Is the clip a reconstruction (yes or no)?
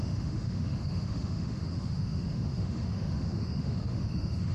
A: yes